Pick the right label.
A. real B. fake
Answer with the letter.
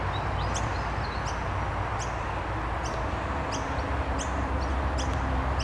A